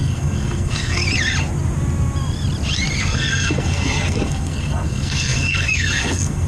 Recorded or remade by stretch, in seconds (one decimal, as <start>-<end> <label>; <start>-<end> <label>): 0.0-1.0 remade; 1.0-3.0 recorded; 3.0-6.5 remade